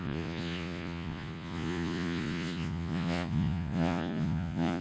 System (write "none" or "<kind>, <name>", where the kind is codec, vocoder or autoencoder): vocoder, Vocos